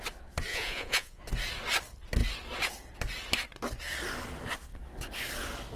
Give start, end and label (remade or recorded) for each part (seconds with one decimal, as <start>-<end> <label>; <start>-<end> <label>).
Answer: 0.0-0.5 recorded; 0.5-1.2 remade; 1.2-5.8 recorded